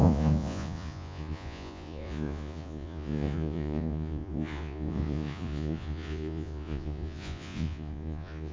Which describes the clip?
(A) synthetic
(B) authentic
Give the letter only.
A